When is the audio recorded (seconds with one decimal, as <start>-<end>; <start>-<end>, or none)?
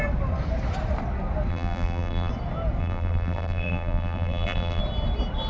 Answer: 0.0-1.5; 2.3-2.8; 4.8-5.5